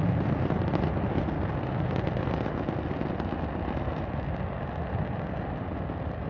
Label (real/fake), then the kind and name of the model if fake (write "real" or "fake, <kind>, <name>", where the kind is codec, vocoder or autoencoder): real